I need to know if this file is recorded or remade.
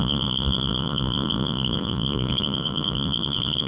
remade